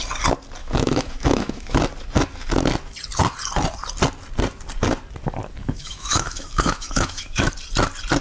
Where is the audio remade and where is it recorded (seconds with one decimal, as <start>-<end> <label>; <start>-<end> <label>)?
0.0-0.6 recorded; 0.6-1.8 remade; 1.8-5.6 recorded; 5.6-7.5 remade; 7.5-8.2 recorded